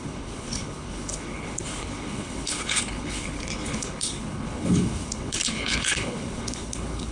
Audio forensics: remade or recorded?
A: remade